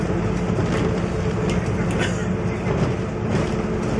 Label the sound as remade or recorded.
recorded